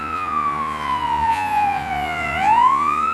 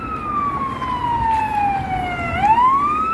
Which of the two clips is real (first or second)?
second